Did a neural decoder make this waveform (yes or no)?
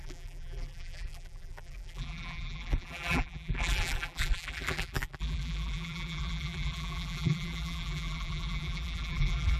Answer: yes